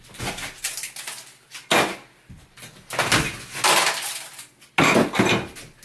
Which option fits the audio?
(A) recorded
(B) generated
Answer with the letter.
A